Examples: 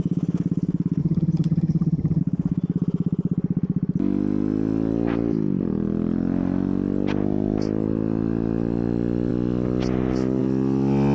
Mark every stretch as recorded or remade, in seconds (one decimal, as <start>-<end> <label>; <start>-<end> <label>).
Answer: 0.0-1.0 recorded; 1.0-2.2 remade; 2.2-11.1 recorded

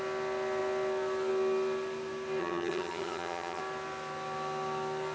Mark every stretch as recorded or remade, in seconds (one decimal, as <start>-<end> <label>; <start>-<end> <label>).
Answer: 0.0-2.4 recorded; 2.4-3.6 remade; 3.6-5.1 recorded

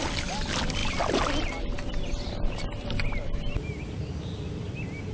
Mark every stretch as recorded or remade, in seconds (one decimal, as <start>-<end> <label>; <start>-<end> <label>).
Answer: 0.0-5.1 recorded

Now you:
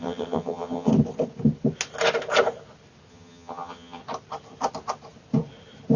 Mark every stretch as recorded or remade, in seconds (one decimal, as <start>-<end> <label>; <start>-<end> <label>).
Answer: 0.0-0.9 remade; 0.9-3.1 recorded; 3.1-4.0 remade; 4.0-6.0 recorded

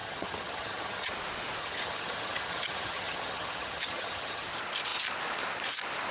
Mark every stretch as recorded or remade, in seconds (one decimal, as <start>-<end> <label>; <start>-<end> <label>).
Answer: 0.0-1.1 remade; 1.1-1.6 recorded; 1.6-4.4 remade; 4.4-6.1 recorded